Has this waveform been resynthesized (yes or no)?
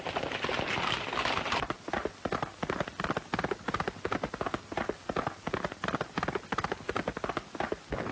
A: no